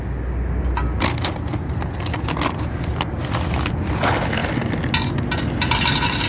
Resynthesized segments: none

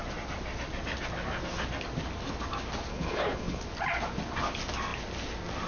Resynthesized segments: 2.9-3.6 (codec, HILCodec)